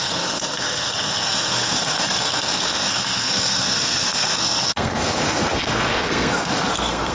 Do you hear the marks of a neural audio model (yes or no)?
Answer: yes